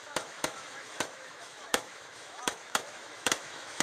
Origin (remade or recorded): remade